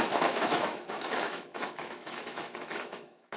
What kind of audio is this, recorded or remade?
remade